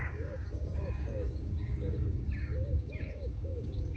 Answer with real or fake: fake